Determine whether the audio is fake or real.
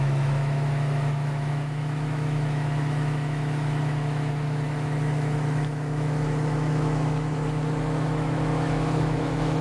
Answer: fake